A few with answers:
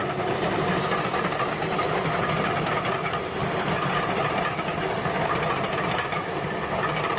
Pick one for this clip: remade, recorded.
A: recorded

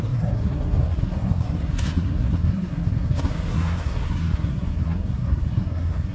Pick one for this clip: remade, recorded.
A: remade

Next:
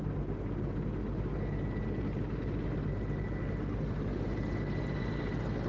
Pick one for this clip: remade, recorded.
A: recorded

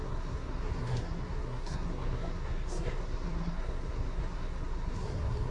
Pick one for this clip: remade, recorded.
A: remade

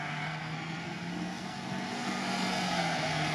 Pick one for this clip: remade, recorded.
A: remade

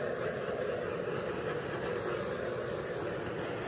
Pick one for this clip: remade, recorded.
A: recorded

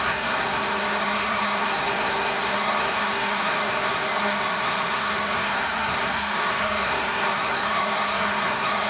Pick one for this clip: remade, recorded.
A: remade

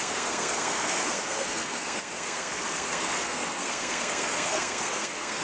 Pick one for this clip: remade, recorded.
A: remade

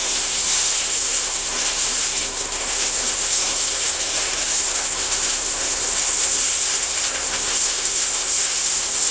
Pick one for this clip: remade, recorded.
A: remade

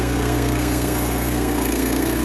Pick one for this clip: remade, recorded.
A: remade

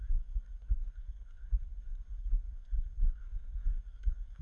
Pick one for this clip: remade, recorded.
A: remade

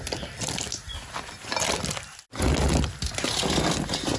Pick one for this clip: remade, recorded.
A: recorded